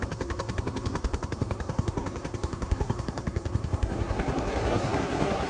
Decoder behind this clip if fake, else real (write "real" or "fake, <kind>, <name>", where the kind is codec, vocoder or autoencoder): fake, codec, SNAC